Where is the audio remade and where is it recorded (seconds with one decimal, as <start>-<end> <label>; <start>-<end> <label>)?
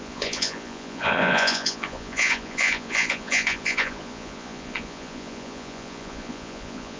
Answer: 0.0-7.0 remade